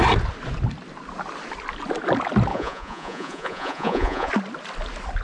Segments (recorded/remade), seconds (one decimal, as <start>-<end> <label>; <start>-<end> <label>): 0.0-2.5 recorded; 2.5-4.3 remade; 4.3-5.2 recorded